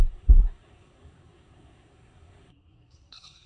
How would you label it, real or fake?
fake